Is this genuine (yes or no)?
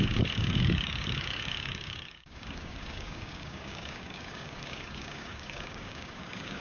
no